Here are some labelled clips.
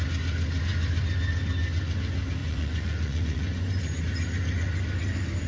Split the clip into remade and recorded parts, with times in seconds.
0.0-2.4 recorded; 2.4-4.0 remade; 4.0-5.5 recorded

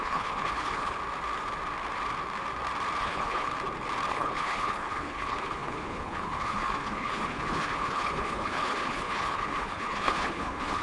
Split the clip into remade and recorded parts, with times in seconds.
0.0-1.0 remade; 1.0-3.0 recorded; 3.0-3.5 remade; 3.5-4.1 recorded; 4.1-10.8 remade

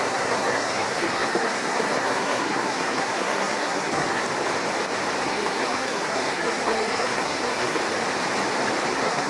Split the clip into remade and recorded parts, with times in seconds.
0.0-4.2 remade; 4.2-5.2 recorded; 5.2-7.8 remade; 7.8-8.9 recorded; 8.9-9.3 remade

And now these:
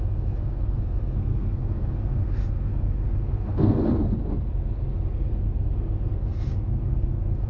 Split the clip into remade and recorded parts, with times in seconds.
0.0-3.8 remade; 3.8-5.1 recorded; 5.1-7.5 remade

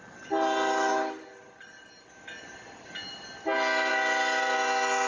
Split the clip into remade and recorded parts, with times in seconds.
0.0-5.1 recorded